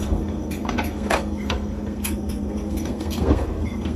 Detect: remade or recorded remade